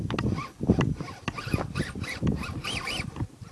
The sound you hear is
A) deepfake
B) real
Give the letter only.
B